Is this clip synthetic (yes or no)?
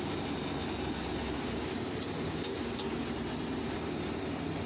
no